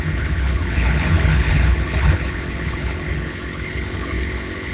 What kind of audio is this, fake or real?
fake